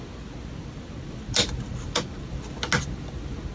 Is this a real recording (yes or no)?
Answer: yes